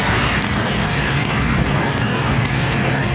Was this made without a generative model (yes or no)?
no